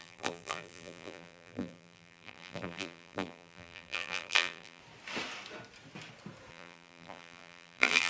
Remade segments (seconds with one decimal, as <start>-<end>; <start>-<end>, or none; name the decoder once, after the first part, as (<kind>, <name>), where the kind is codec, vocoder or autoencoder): 0.0-4.8 (vocoder, BigVGAN v2); 6.5-8.1